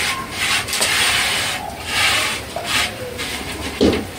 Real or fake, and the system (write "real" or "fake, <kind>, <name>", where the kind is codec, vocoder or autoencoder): fake, vocoder, BigVGAN v2